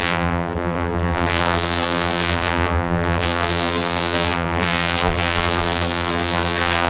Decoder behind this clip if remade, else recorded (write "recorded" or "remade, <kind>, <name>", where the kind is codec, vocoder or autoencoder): remade, vocoder, BigVGAN v2